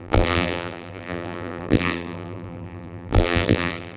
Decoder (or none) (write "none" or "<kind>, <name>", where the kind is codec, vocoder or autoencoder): vocoder, BigVGAN v2